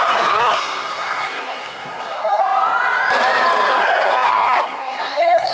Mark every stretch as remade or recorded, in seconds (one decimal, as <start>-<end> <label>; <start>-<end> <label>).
0.0-2.4 remade; 2.4-3.7 recorded; 3.7-5.5 remade